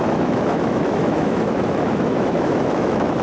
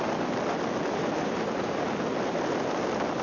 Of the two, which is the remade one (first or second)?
first